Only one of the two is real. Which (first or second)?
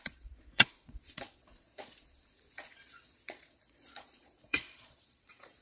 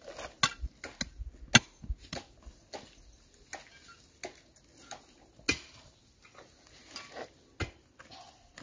second